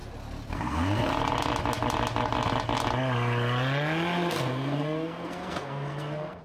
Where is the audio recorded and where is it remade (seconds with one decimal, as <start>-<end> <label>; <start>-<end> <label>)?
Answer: 0.0-0.5 recorded; 0.5-1.1 remade; 1.1-4.3 recorded; 4.3-6.4 remade